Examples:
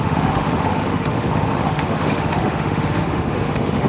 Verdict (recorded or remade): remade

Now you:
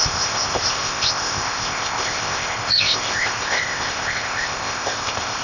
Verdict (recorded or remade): remade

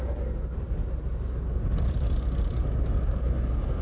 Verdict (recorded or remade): recorded